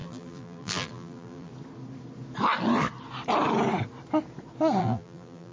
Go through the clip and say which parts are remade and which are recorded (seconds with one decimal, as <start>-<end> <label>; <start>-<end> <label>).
0.0-1.5 remade; 1.5-4.8 recorded; 4.8-5.5 remade